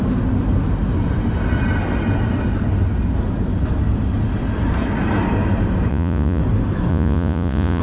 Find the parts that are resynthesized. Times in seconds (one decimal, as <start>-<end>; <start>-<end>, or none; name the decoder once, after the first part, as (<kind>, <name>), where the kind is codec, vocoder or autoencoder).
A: 5.9-6.4 (vocoder, Vocos); 6.9-7.8